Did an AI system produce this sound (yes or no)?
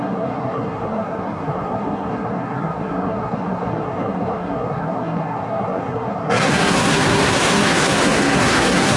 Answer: yes